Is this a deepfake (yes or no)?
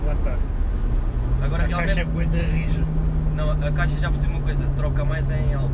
no